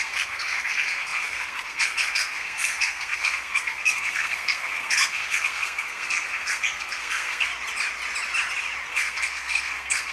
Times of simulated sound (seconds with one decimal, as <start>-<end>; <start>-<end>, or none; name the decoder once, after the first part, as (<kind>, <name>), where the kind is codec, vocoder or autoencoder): 0.0-7.5 (codec, SNAC); 8.9-10.1